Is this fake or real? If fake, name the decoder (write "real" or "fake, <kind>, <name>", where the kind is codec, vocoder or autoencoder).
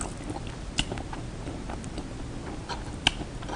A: real